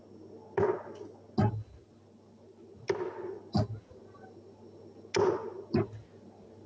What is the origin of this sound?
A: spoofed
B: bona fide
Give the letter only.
B